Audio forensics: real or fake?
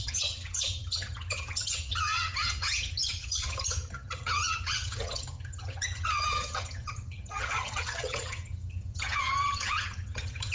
fake